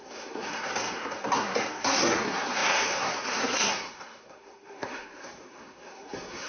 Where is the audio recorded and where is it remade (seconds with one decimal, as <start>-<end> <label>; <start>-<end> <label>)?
0.0-6.5 remade